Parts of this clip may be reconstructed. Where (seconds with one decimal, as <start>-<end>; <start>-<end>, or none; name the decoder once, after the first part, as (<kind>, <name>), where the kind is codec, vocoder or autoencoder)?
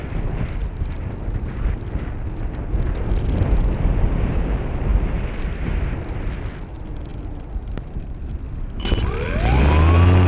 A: 4.9-6.0 (vocoder, BigVGAN v2)